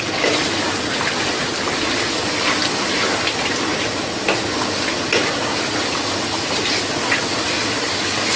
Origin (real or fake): real